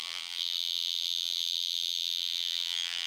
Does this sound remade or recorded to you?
remade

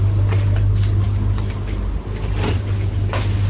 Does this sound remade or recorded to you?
recorded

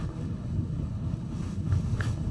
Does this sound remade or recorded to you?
remade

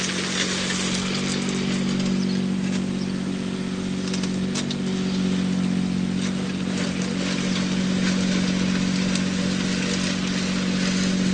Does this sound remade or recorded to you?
recorded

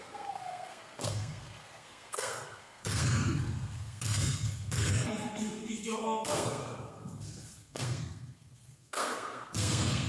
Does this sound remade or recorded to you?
remade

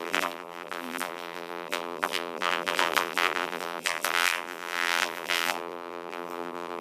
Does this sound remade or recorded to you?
remade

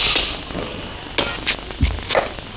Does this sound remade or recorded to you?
recorded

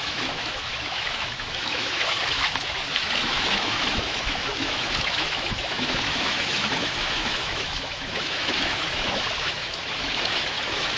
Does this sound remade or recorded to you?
remade